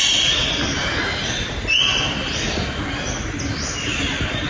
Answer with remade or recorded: recorded